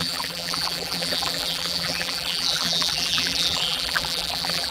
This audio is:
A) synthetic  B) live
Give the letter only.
A